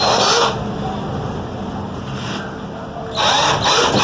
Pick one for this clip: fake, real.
real